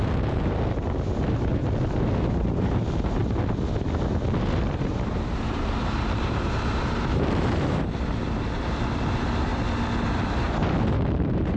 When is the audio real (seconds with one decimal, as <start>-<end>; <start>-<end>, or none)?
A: 1.5-2.3; 3.2-4.9; 9.5-11.1